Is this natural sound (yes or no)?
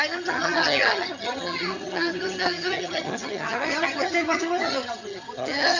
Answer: no